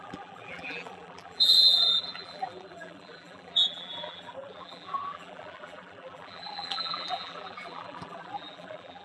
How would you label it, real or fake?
fake